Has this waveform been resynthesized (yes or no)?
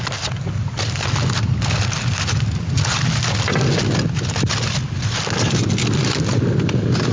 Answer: no